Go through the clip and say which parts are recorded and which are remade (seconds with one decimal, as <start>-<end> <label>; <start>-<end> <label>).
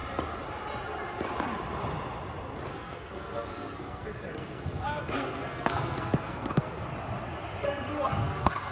0.0-2.7 recorded; 2.7-6.9 remade; 6.9-7.6 recorded; 7.6-8.7 remade